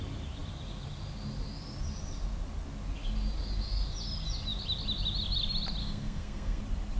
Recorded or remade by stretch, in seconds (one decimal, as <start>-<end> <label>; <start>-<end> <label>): 0.0-5.8 recorded; 5.8-6.6 remade; 6.6-7.0 recorded